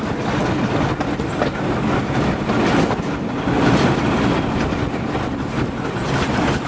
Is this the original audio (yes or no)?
yes